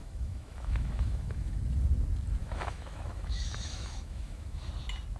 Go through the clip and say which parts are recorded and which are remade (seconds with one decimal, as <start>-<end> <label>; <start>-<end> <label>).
0.0-1.6 remade; 1.6-2.4 recorded; 2.4-4.7 remade; 4.7-5.2 recorded